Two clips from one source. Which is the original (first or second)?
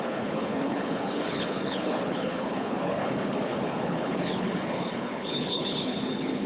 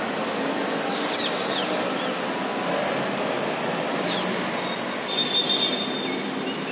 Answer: second